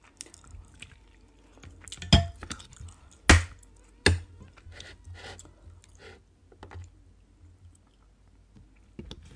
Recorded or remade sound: recorded